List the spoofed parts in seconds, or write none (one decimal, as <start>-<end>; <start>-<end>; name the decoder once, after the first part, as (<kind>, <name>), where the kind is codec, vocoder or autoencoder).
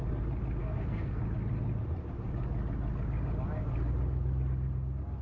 0.6-1.2 (codec, SNAC)